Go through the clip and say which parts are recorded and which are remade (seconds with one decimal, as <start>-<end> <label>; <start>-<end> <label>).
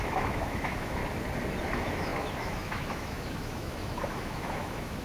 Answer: 0.0-1.0 remade; 1.0-1.6 recorded; 1.6-5.0 remade